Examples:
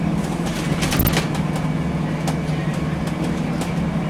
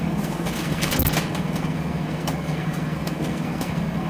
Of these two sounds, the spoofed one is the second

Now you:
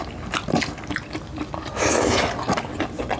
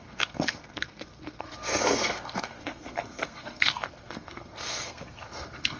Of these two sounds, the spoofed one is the second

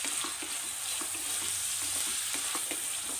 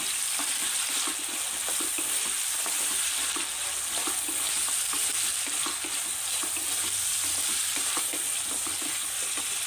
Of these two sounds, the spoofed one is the second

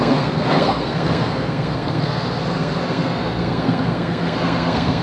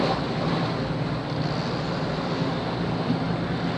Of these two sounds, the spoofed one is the first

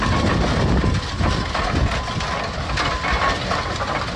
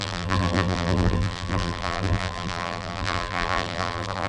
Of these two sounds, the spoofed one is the second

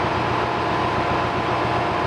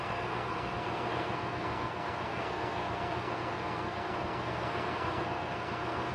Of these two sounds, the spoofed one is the second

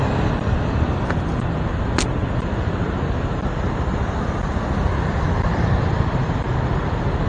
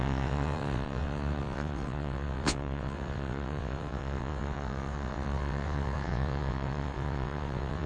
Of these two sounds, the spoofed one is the second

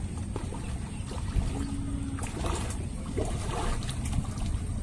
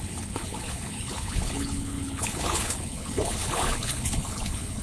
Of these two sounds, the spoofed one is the second